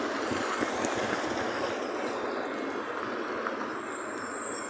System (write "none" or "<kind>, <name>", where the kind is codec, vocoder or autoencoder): none